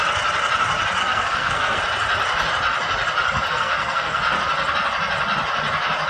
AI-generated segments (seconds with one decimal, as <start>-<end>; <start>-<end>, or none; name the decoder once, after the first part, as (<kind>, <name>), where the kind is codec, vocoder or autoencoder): 1.0-1.8 (codec, SNAC); 3.5-4.2